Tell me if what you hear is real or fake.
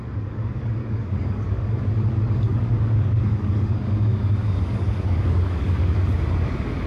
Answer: fake